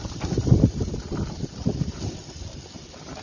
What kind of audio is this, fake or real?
real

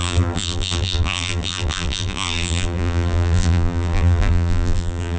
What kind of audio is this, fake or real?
fake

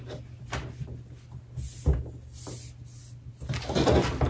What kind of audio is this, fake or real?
real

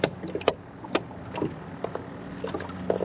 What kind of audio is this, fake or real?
real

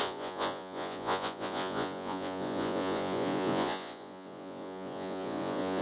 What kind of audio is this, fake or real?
fake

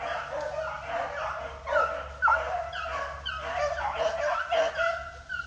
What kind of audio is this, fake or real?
real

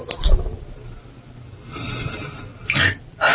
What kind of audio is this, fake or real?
real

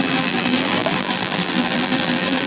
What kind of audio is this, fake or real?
fake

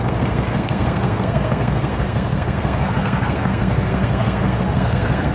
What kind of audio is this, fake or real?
fake